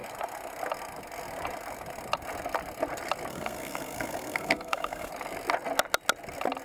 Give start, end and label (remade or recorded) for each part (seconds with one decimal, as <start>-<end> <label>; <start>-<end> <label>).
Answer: 0.0-3.3 recorded; 3.3-5.1 remade; 5.1-6.6 recorded